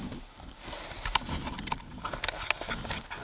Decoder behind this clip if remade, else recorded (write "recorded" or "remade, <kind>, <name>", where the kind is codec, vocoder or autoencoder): recorded